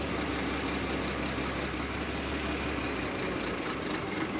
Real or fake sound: real